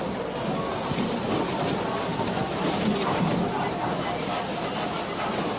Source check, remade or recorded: recorded